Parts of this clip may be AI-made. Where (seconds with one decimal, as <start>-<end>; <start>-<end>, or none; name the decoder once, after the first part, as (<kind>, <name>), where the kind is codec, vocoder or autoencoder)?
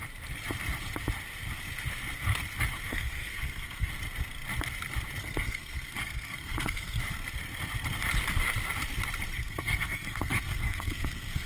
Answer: 2.9-3.9 (codec, SNAC); 5.2-7.0; 9.3-11.5